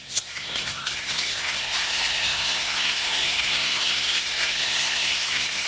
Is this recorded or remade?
remade